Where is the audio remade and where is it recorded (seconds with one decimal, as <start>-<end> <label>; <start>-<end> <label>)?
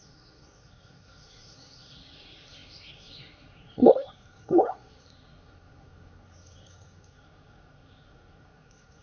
0.0-9.0 remade